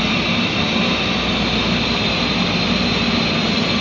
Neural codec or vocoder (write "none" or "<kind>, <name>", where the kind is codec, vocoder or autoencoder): none